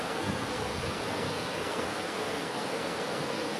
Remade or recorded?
remade